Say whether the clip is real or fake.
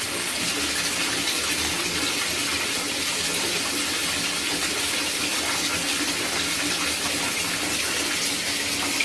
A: real